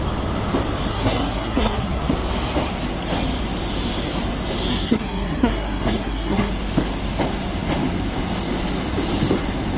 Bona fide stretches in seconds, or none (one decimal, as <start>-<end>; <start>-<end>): 0.0-0.9; 2.0-4.7; 6.5-9.8